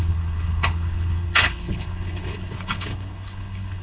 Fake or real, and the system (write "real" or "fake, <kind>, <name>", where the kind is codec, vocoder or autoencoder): fake, codec, HILCodec